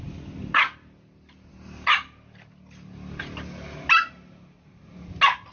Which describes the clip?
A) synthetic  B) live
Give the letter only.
B